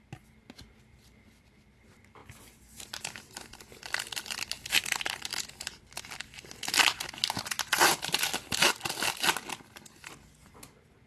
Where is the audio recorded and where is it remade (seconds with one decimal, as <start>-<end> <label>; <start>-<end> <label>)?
0.0-11.1 recorded

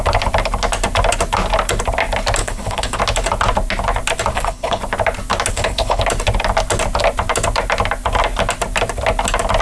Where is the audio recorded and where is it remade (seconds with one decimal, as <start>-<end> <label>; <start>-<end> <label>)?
0.0-2.4 recorded; 2.4-3.0 remade; 3.0-4.3 recorded; 4.3-4.8 remade; 4.8-5.5 recorded; 5.5-6.0 remade; 6.0-9.6 recorded

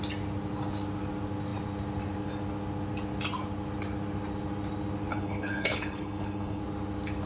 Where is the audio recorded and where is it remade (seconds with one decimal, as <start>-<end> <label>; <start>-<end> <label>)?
0.0-5.1 recorded; 5.1-6.6 remade; 6.6-7.3 recorded

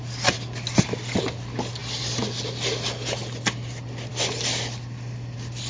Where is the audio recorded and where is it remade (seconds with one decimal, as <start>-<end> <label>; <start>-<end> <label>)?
0.0-5.7 recorded